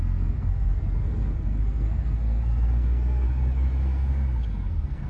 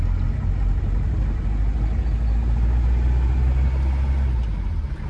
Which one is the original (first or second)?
second